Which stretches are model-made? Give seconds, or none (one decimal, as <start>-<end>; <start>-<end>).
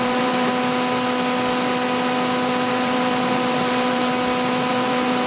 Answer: 0.0-0.5; 2.7-4.1; 4.7-5.3